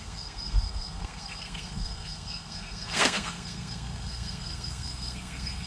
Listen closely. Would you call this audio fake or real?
fake